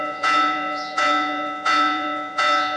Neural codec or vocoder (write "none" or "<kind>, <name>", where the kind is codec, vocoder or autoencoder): vocoder, Vocos